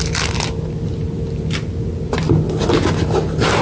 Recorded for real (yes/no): yes